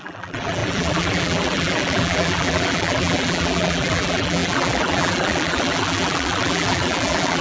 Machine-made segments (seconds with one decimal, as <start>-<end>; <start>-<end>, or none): 0.0-7.4